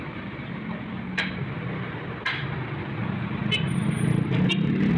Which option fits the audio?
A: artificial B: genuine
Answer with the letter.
B